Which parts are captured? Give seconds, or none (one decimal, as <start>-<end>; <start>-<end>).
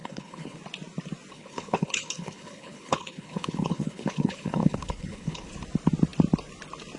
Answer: 0.6-1.3; 5.5-7.0